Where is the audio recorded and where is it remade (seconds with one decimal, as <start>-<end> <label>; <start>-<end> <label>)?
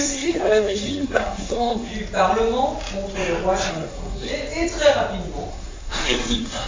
0.0-1.9 remade; 1.9-3.7 recorded; 3.7-4.3 remade; 4.3-5.5 recorded; 5.5-6.7 remade